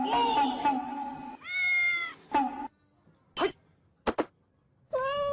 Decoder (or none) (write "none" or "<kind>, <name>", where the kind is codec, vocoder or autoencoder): none